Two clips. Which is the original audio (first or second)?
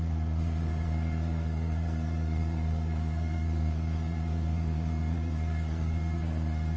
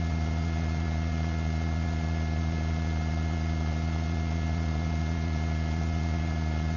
second